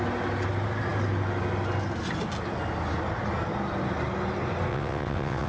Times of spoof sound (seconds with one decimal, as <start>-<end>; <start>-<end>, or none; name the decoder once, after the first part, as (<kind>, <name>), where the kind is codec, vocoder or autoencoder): 4.7-5.5 (vocoder, WaveNeXt)